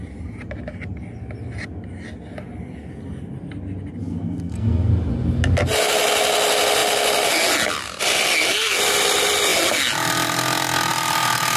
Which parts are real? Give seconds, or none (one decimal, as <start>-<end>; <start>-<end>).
0.0-4.0; 4.9-11.6